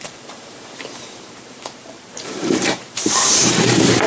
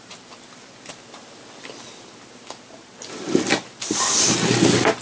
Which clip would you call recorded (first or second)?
second